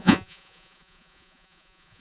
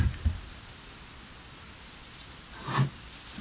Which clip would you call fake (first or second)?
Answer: first